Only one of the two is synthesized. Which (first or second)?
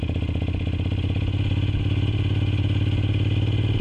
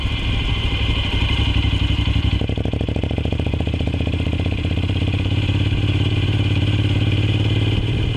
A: second